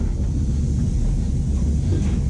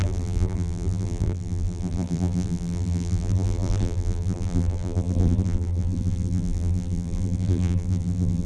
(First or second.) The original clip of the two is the first